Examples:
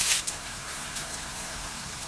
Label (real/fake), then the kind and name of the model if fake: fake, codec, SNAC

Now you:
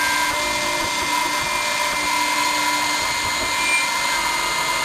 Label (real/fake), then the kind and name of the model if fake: real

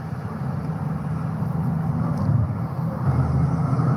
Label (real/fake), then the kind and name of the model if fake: real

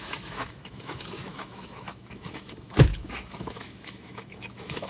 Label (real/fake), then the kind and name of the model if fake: fake, autoencoder, DAC-VAE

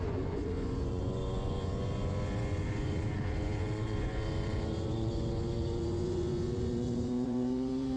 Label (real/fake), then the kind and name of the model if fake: fake, vocoder, Vocos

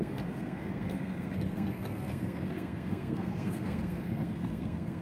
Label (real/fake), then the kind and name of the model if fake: fake, codec, SNAC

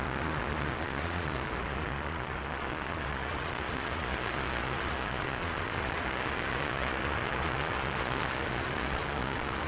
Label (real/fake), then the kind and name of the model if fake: fake, vocoder, Vocos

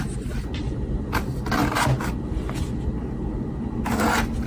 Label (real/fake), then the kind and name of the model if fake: real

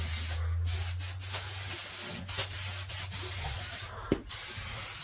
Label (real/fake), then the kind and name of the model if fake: real